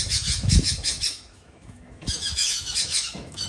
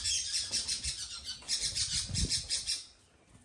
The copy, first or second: first